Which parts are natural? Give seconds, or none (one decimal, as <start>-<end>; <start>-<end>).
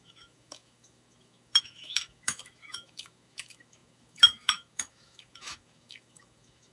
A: none